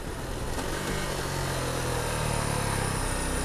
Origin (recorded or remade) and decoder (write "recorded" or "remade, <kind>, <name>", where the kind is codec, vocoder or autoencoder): recorded